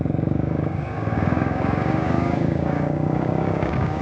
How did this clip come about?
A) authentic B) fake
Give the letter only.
B